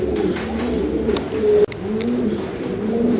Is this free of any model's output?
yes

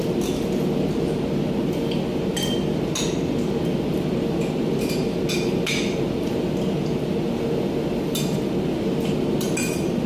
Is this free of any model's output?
yes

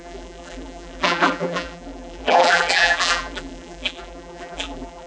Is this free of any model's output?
no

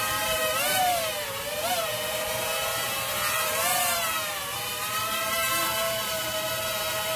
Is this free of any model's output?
no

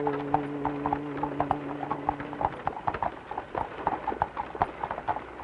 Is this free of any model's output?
yes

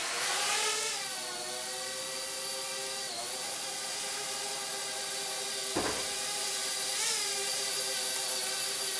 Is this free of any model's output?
yes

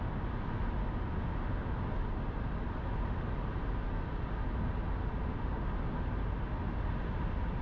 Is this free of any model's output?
yes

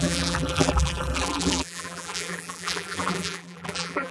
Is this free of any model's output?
no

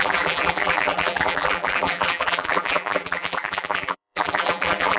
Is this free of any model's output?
no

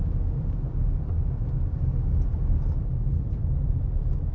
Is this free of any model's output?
yes